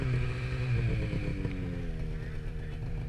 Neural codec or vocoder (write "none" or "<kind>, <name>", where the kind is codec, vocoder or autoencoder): none